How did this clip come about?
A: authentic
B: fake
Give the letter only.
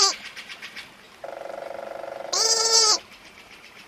B